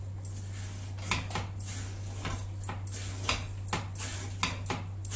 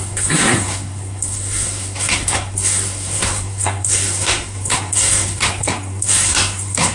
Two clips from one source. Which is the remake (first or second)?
second